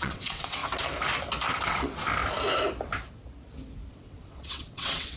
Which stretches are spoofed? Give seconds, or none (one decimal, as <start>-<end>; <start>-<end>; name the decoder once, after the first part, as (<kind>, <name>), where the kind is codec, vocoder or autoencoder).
0.0-0.6 (vocoder, WaveNeXt); 1.6-2.0; 3.9-5.2